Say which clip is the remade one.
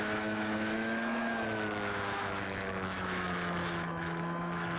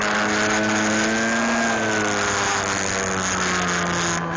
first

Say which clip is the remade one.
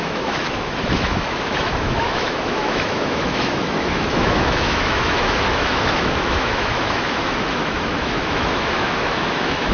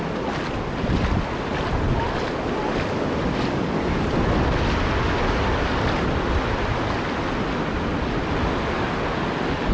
first